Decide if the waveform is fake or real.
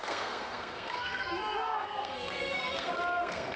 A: fake